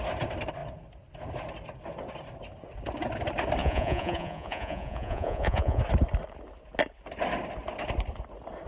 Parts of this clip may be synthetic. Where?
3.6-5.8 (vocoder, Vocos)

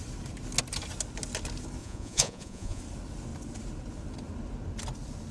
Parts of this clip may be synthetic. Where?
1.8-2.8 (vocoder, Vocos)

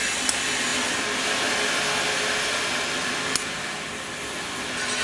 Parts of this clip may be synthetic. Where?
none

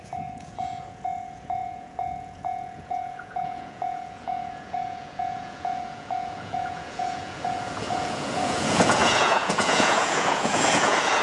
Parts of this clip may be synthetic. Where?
0.0-11.2 (vocoder, Vocos)

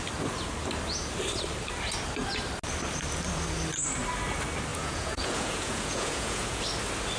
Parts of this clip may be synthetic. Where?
4.7-6.6 (vocoder, Vocos)

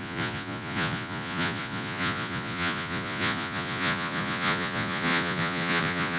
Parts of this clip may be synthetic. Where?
0.0-6.2 (vocoder, Vocos)

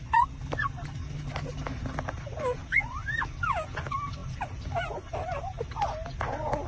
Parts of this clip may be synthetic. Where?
none